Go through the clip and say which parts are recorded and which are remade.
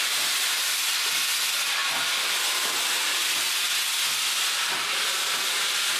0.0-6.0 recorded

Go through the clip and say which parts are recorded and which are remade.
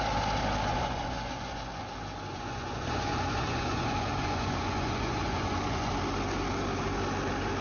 0.0-0.7 recorded; 0.7-1.8 remade; 1.8-2.3 recorded; 2.3-5.9 remade; 5.9-7.6 recorded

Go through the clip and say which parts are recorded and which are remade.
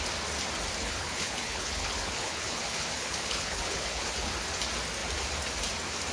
0.0-0.8 recorded; 0.8-4.3 remade; 4.3-6.1 recorded